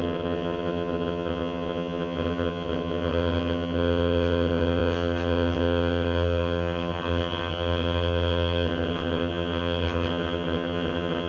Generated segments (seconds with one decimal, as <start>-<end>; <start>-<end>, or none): 0.0-11.3